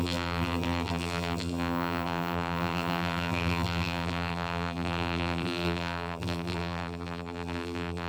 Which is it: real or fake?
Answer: fake